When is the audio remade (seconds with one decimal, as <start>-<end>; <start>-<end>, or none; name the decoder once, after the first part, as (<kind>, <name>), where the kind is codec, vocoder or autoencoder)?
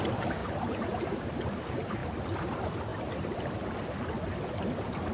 0.4-1.2 (vocoder, BigVGAN v2)